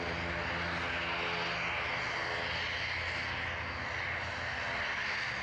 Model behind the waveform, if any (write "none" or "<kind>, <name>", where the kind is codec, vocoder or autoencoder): none